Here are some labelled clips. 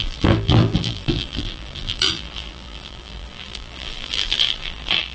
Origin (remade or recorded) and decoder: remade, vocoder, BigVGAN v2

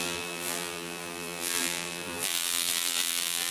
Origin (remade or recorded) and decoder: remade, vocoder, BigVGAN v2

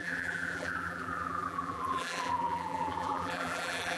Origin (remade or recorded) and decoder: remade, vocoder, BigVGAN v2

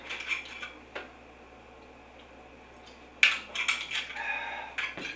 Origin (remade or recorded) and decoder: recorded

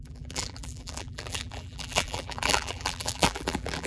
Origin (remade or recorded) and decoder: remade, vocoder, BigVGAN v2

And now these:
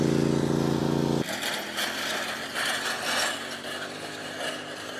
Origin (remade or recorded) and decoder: recorded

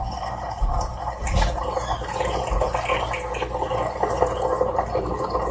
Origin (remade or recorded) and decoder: recorded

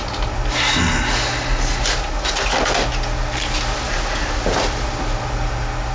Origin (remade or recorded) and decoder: recorded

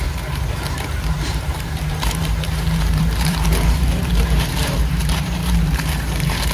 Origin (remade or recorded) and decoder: remade, vocoder, BigVGAN v2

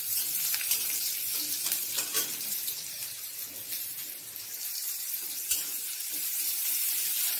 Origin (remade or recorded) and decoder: remade, vocoder, BigVGAN v2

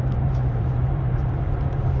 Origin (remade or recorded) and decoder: remade, vocoder, BigVGAN v2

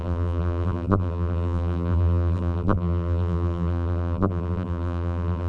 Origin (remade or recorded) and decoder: remade, vocoder, BigVGAN v2